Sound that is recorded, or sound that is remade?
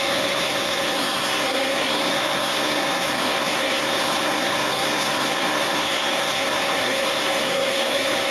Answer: remade